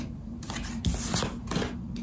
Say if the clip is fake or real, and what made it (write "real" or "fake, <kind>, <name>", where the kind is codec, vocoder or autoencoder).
real